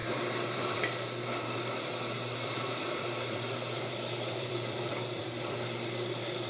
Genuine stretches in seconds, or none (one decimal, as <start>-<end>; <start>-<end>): none